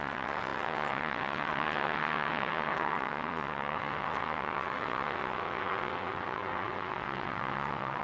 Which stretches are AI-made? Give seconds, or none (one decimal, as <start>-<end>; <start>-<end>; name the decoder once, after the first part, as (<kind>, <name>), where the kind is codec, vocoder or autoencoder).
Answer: 0.0-8.0 (vocoder, WaveNeXt)